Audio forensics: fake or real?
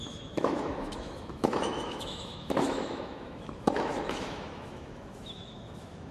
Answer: fake